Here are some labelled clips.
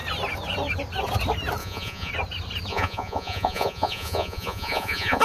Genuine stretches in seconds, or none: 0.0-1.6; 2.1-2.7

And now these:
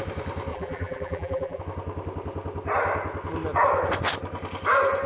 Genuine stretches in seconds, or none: 0.0-0.5; 1.6-5.1

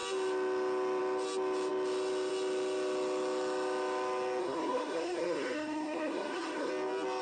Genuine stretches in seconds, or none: 0.0-4.4; 6.7-7.2